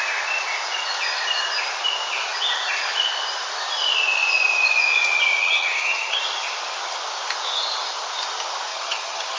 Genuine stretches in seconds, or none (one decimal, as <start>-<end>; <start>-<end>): 0.0-5.4; 6.2-8.7

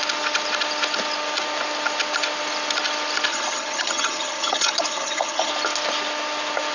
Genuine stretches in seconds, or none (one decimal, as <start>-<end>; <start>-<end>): 0.0-3.3; 5.5-6.7

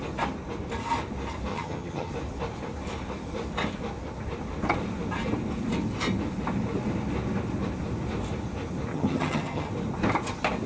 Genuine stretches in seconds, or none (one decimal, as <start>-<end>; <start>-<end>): 0.0-1.5; 2.1-8.9; 9.7-10.7

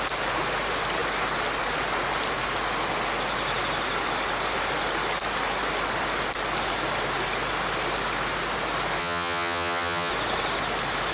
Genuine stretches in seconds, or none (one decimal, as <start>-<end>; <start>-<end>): 0.0-9.0; 10.1-11.1

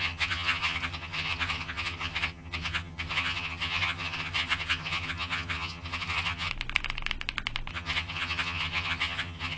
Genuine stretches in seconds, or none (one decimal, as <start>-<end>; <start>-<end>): 6.5-7.7

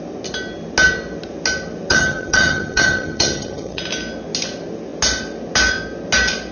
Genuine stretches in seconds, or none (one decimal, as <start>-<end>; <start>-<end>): 0.0-1.9; 3.8-6.5